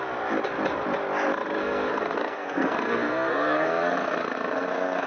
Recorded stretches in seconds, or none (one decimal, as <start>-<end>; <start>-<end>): 0.0-1.6